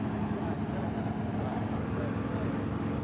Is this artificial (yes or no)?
no